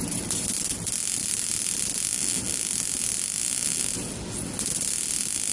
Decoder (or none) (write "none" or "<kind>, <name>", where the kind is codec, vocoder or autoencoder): none